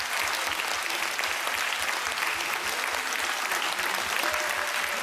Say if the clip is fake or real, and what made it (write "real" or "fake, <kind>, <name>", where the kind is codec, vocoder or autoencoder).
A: real